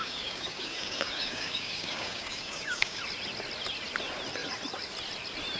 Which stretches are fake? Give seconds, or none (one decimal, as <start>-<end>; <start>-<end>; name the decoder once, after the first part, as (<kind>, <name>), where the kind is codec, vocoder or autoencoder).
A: 0.0-3.0 (codec, DAC)